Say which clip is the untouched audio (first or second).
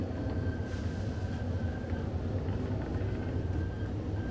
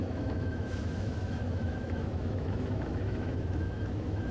first